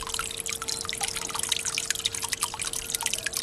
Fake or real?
real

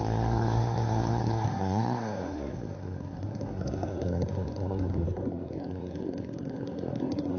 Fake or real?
fake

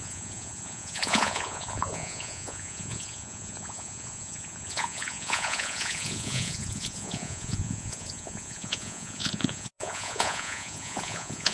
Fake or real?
fake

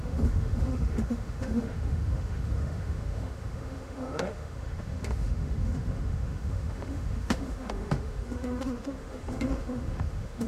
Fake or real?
fake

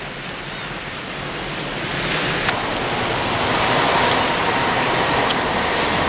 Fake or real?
real